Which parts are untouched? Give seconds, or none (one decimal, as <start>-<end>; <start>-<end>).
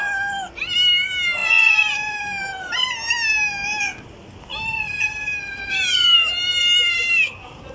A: 0.0-7.7